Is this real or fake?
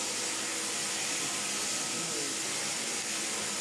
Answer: real